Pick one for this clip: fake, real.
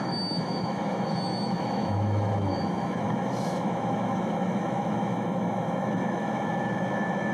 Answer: fake